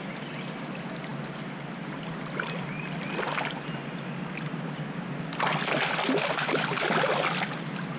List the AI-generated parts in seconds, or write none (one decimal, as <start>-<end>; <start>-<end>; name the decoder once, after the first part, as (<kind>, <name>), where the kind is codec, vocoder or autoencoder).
none